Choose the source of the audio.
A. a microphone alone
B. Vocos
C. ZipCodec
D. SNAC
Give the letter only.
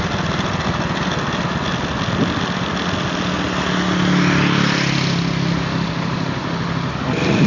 A